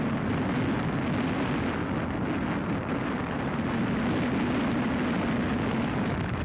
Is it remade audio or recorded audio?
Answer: recorded